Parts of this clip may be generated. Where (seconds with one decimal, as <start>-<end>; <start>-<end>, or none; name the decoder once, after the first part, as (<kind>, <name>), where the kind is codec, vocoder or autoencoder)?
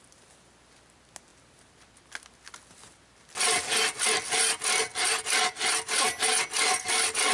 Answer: none